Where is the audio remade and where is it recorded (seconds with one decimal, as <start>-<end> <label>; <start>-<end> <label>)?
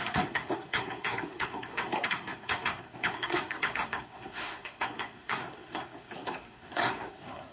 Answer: 0.0-7.5 remade